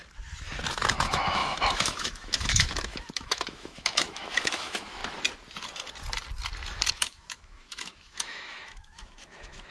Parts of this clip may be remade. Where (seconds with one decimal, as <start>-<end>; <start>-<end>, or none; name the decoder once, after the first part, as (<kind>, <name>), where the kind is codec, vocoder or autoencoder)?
0.7-5.0 (autoencoder, DAC-VAE); 6.9-9.7